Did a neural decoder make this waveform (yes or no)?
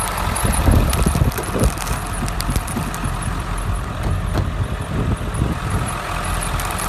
no